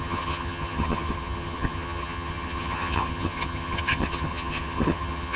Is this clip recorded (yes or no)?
no